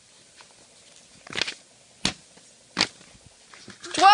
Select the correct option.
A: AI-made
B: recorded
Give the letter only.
B